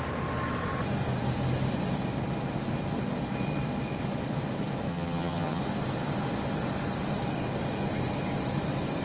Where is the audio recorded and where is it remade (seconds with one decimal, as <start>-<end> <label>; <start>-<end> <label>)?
0.0-4.9 recorded; 4.9-5.6 remade; 5.6-9.0 recorded

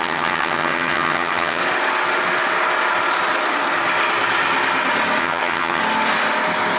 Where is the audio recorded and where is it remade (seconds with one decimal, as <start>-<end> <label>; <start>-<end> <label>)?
0.0-1.6 remade; 1.6-5.2 recorded; 5.2-5.8 remade; 5.8-6.8 recorded

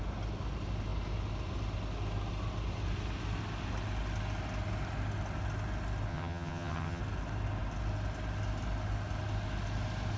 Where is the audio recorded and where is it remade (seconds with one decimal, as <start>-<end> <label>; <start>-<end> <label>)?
0.0-6.1 recorded; 6.1-7.0 remade; 7.0-10.2 recorded

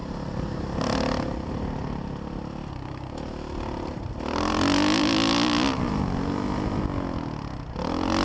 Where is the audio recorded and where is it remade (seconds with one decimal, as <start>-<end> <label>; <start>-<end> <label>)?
0.0-8.2 recorded

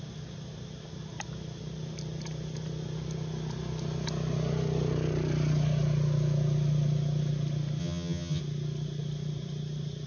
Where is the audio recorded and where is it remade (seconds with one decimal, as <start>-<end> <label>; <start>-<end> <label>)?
0.0-7.8 recorded; 7.8-8.4 remade; 8.4-10.1 recorded

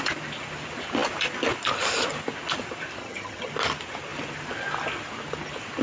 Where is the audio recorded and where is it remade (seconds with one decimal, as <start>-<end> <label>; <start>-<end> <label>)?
0.0-3.0 recorded; 3.0-3.5 remade; 3.5-5.8 recorded

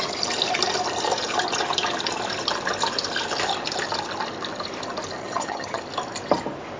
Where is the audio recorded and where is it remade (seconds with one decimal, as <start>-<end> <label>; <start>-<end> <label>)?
0.0-5.2 recorded; 5.2-5.8 remade; 5.8-6.8 recorded